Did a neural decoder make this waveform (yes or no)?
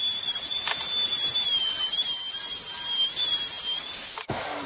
no